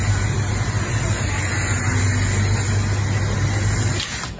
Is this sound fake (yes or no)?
no